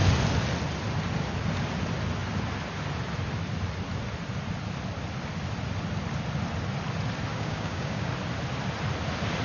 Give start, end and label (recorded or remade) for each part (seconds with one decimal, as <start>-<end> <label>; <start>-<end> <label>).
0.0-7.3 recorded; 7.3-8.1 remade; 8.1-9.4 recorded

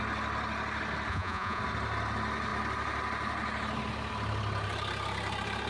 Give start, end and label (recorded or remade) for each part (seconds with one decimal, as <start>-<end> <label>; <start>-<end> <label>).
0.0-1.1 recorded; 1.1-1.6 remade; 1.6-5.7 recorded